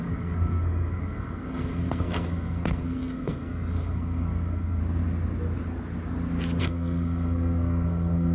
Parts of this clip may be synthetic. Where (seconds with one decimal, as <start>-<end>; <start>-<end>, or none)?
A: 0.0-4.8; 6.6-8.3